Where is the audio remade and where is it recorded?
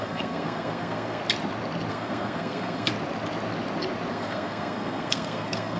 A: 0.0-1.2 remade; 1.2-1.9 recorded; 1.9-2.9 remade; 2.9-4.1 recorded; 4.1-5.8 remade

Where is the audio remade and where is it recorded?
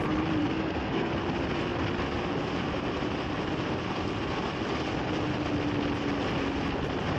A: 0.0-0.4 recorded; 0.4-1.1 remade; 1.1-7.2 recorded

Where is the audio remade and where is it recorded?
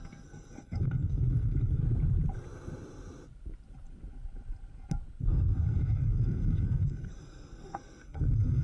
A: 0.0-1.8 remade; 1.8-5.2 recorded; 5.2-8.6 remade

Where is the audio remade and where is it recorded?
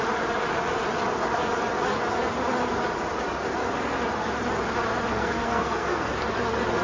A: 0.0-5.1 recorded; 5.1-6.1 remade; 6.1-6.8 recorded